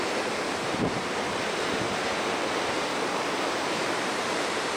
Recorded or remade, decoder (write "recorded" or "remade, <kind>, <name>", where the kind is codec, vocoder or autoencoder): remade, vocoder, BigVGAN v2